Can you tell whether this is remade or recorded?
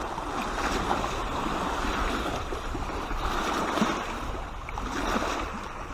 recorded